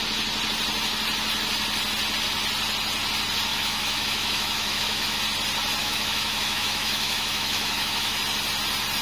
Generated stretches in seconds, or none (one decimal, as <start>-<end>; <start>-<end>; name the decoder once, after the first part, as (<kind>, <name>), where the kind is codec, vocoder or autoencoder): 3.5-5.2 (autoencoder, DAC-VAE); 5.8-8.2